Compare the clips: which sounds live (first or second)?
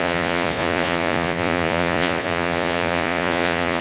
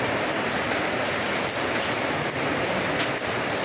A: second